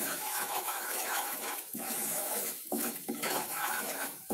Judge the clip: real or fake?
fake